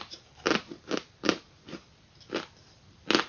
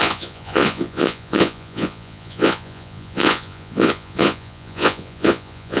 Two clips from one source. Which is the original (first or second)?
first